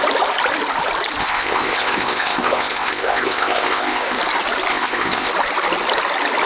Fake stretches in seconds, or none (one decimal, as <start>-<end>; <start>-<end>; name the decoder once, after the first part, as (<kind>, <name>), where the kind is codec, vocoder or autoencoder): 1.2-4.2 (codec, ZipCodec); 4.7-5.3